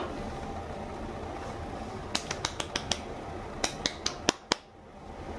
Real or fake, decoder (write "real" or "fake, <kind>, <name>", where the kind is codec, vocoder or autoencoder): real